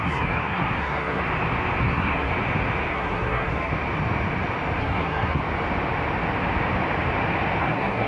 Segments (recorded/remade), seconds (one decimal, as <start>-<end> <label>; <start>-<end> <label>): 0.0-1.2 remade; 1.2-1.8 recorded; 1.8-2.3 remade; 2.3-2.9 recorded; 2.9-3.7 remade; 3.7-4.8 recorded; 4.8-5.4 remade; 5.4-7.6 recorded; 7.6-8.1 remade